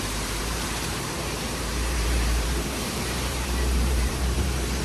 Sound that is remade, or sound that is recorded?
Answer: remade